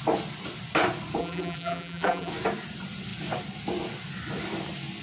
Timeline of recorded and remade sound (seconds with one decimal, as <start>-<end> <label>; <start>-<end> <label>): 0.0-1.2 recorded; 1.2-2.3 remade; 2.3-5.0 recorded